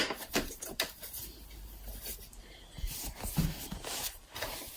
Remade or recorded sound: recorded